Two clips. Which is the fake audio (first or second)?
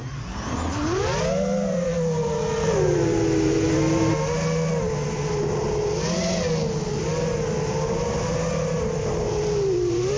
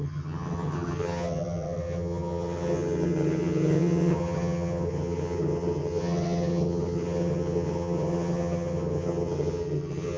second